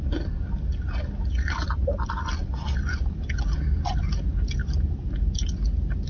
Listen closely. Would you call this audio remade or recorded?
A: recorded